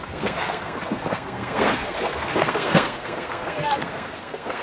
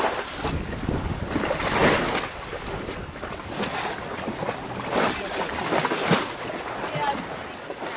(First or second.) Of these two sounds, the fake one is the first